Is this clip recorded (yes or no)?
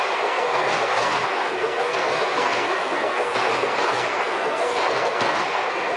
no